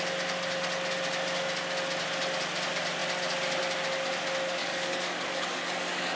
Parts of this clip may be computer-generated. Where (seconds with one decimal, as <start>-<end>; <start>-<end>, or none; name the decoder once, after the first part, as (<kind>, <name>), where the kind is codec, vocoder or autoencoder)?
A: 4.6-6.2 (codec, DAC)